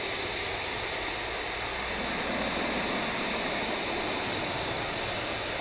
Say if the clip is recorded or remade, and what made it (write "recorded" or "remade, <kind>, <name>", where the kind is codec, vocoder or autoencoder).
recorded